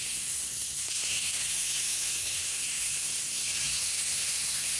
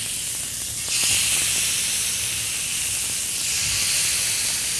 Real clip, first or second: second